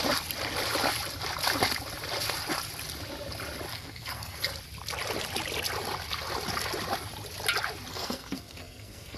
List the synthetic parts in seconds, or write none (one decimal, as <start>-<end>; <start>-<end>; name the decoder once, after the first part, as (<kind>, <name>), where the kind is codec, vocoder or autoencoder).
3.7-4.5 (codec, SNAC); 7.9-9.2